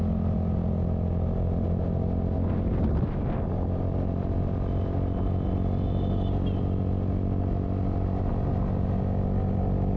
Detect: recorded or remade recorded